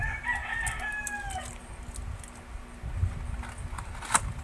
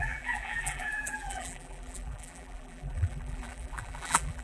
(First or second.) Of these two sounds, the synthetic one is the second